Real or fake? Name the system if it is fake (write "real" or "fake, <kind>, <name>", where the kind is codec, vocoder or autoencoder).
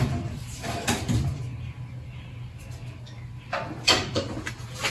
real